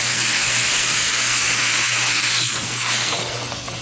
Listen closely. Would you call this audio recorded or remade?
remade